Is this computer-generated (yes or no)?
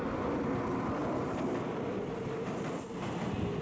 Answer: no